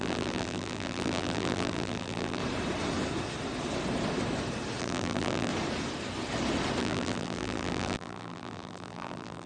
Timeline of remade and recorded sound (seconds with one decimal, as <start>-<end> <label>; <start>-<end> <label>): 0.0-2.4 remade; 2.4-4.8 recorded; 4.8-5.5 remade; 5.5-6.8 recorded; 6.8-9.5 remade